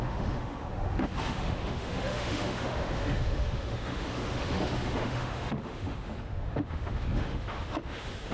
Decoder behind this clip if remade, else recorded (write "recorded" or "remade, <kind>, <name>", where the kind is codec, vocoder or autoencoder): remade, autoencoder, DAC-VAE